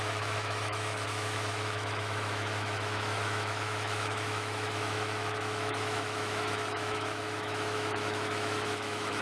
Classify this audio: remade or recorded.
remade